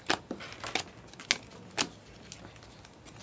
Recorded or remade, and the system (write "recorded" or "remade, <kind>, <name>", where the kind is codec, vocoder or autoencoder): recorded